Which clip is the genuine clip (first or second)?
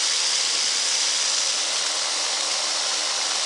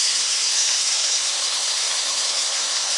first